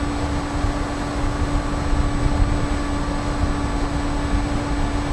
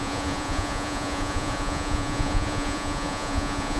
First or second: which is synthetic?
second